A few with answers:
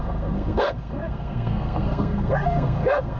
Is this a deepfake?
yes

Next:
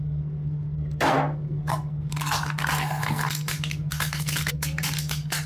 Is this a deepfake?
yes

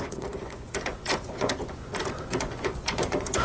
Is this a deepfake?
yes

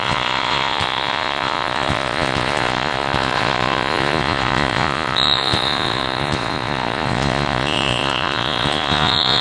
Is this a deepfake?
yes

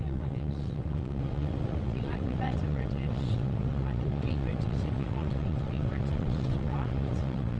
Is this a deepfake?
yes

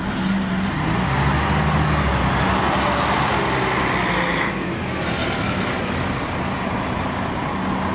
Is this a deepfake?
no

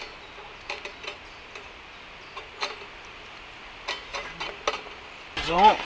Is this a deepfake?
no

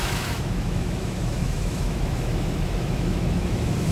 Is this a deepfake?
yes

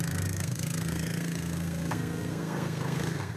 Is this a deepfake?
yes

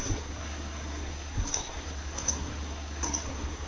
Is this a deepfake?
yes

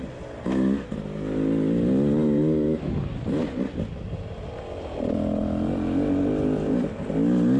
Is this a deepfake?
no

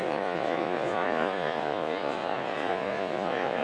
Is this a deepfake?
yes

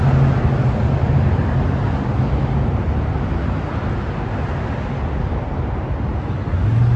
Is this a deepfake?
no